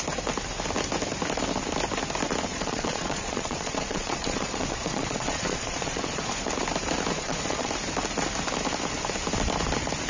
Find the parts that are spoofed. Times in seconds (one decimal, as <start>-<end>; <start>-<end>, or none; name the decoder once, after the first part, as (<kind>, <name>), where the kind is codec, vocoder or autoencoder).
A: 2.5-6.3 (vocoder, Vocos); 7.1-7.7